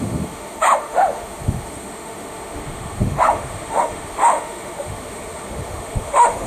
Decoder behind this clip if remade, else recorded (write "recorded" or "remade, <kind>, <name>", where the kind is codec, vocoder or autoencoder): remade, autoencoder, DAC-VAE